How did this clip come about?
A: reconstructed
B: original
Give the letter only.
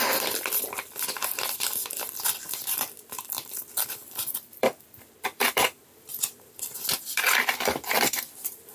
A